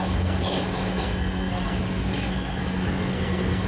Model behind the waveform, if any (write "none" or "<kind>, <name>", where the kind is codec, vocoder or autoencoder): codec, SNAC